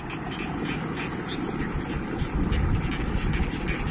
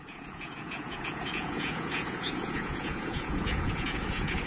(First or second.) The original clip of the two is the first